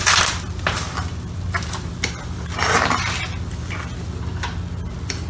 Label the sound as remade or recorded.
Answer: recorded